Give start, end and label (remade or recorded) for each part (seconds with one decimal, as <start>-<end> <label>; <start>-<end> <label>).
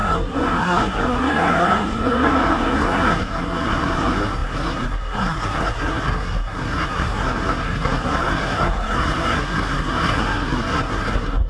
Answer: 0.0-11.5 remade